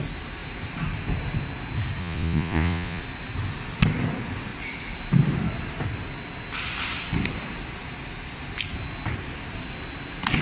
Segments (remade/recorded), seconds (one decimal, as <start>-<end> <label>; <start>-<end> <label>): 0.0-2.0 recorded; 2.0-3.0 remade; 3.0-10.4 recorded